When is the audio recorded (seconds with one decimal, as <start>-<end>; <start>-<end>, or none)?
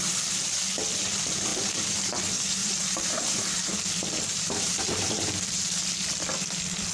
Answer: 0.0-1.5; 2.2-2.6; 3.7-4.3; 5.8-6.9